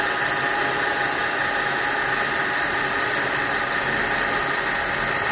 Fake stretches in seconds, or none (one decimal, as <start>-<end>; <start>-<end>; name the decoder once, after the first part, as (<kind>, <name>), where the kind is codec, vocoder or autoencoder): none